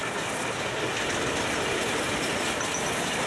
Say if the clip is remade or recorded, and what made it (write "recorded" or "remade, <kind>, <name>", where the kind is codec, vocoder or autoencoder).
recorded